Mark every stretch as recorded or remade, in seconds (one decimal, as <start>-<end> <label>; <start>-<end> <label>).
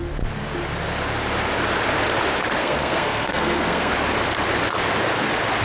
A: 0.0-2.6 recorded; 2.6-3.9 remade; 3.9-5.6 recorded